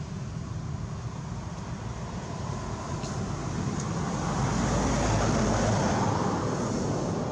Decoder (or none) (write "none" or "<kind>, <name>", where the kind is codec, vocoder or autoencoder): none